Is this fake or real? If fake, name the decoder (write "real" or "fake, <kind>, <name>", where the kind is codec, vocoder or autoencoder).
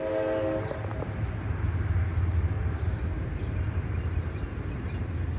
real